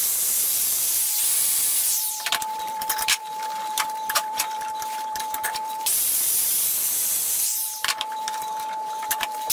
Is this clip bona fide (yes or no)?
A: no